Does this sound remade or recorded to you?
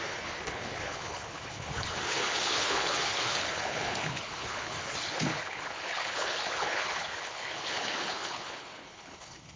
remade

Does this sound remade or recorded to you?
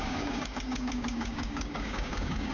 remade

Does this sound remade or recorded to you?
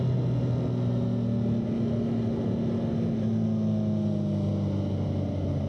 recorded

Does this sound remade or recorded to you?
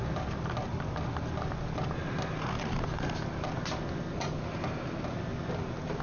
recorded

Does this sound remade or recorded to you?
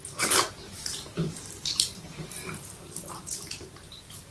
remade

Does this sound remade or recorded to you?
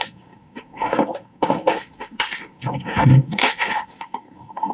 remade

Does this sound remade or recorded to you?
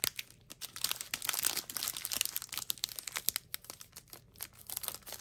recorded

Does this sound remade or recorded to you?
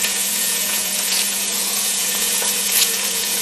remade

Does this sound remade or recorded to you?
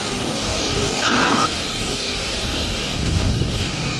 remade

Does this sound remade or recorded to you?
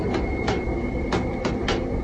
recorded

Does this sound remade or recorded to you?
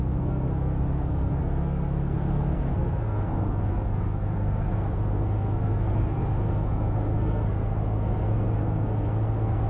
remade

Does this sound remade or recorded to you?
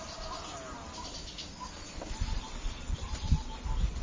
recorded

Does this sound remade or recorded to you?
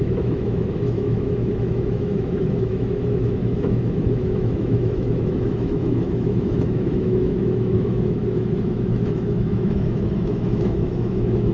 remade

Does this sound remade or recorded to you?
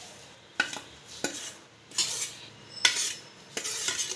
recorded